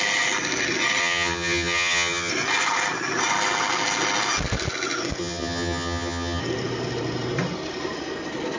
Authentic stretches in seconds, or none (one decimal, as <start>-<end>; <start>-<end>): 0.0-1.0; 2.3-5.2; 6.4-8.6